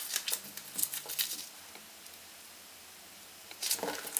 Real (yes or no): yes